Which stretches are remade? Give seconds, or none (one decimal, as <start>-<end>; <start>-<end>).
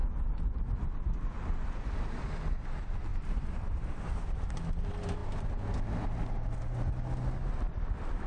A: 3.1-4.3